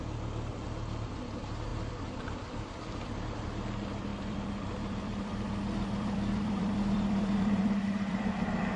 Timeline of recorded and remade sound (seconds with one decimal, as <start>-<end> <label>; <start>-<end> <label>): 0.0-1.7 recorded; 1.7-2.2 remade; 2.2-4.1 recorded; 4.1-8.3 remade; 8.3-8.8 recorded